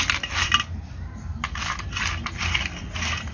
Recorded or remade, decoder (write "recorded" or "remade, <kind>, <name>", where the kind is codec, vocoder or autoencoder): recorded